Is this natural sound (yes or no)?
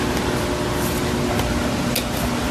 yes